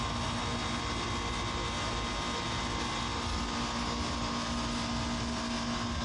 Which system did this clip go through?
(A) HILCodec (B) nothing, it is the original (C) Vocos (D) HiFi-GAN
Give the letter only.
B